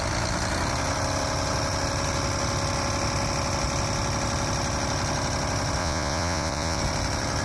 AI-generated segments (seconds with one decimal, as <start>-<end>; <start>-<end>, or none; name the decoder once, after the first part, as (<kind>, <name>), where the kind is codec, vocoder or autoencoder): 5.8-6.8 (vocoder, Vocos)